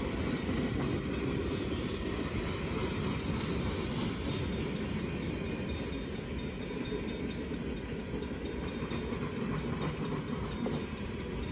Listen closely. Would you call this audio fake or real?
real